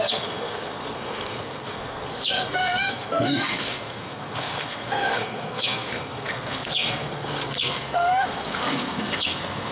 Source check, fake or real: fake